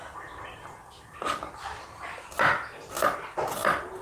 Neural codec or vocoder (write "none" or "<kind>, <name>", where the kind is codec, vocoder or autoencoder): none